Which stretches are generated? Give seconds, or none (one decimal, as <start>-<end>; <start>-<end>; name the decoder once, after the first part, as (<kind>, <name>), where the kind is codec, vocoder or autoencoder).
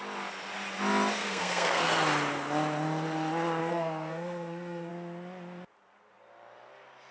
1.2-1.9 (codec, SNAC); 3.6-4.9